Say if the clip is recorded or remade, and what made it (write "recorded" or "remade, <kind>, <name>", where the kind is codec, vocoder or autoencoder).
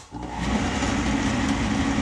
recorded